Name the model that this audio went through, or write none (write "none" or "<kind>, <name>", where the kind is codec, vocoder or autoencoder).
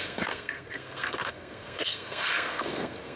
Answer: codec, SNAC